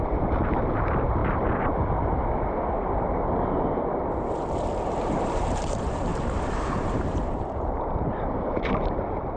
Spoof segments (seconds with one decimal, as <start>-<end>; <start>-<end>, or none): 0.0-1.2; 5.1-6.1; 6.7-9.4